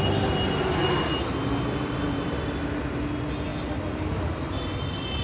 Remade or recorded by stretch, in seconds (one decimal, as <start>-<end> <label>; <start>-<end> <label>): 0.0-5.2 recorded